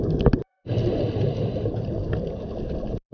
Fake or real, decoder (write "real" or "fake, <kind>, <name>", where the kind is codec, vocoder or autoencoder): real